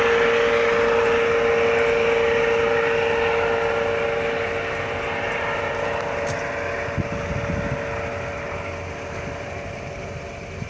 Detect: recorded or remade recorded